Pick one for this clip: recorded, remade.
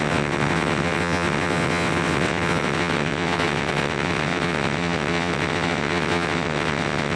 remade